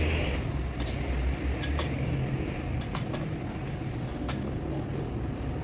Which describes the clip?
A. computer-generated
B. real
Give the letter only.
B